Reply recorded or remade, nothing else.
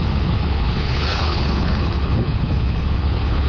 remade